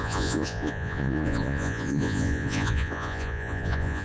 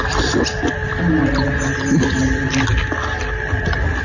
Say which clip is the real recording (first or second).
second